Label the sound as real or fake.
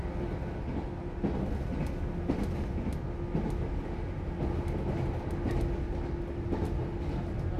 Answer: real